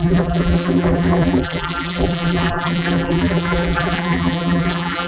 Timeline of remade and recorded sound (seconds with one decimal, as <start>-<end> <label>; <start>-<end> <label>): 0.0-5.1 remade